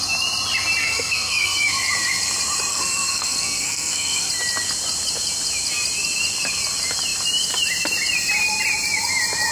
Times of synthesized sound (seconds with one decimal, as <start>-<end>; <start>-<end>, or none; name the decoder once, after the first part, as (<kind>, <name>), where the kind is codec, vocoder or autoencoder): 0.8-1.7 (codec, SNAC); 2.7-4.3